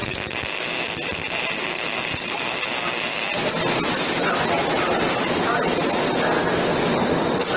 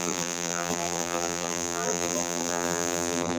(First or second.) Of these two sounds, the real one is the first